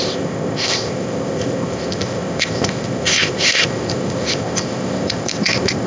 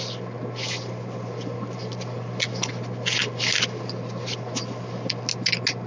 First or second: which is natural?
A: second